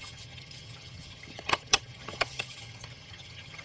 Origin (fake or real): fake